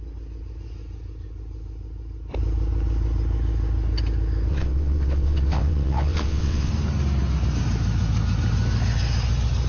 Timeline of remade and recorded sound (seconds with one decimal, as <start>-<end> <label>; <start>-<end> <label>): 0.0-4.5 recorded; 4.5-6.7 remade; 6.7-9.7 recorded